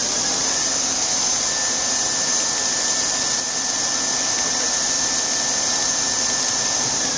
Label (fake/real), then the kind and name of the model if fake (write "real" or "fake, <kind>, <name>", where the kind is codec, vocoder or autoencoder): real